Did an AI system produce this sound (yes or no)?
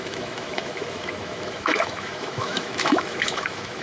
yes